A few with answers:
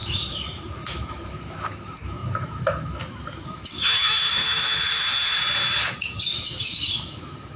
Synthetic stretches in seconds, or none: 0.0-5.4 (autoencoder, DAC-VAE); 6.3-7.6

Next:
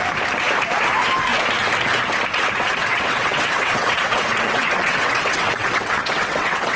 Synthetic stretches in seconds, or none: 2.7-6.8 (vocoder, WaveNeXt)

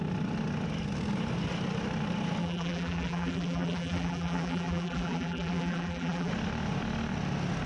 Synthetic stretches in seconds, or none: 2.4-6.3 (vocoder, BigVGAN v2)

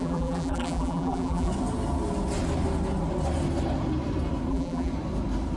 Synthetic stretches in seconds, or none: 0.0-1.5 (vocoder, BigVGAN v2); 4.5-4.9

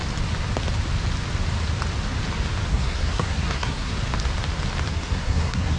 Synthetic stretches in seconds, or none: 2.7-3.9 (codec, SNAC); 4.9-5.8

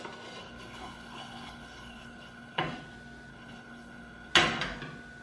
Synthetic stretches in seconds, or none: 0.4-2.6 (codec, HILCodec); 3.3-4.3

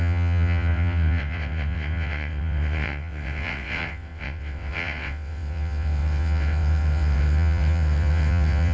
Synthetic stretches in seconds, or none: 0.0-8.7 (vocoder, WaveNeXt)